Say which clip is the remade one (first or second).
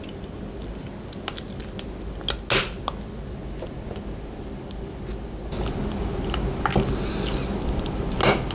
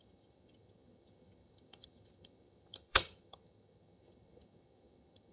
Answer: second